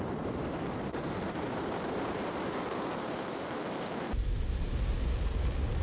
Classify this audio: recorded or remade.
remade